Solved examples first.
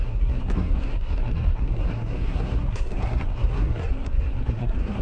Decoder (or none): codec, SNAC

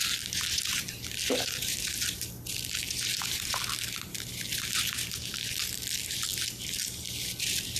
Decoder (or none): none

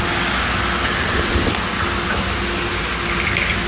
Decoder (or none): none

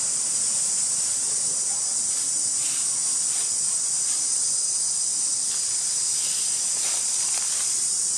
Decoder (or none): none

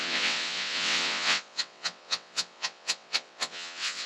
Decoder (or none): vocoder, WaveNeXt